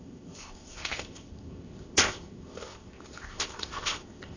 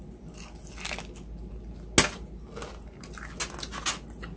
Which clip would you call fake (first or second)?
first